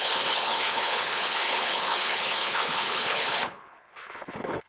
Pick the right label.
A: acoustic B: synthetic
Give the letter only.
B